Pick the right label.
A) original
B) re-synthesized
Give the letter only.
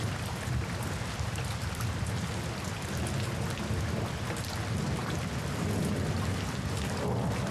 A